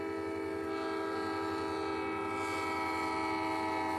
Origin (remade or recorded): recorded